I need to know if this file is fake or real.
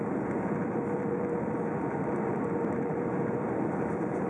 fake